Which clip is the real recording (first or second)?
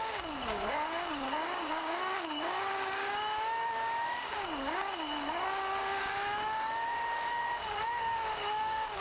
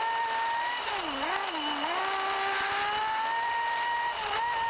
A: second